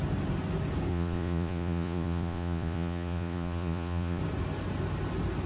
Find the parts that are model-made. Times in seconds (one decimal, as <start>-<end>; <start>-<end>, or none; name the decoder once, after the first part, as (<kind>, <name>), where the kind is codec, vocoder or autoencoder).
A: 0.9-4.2 (vocoder, Vocos)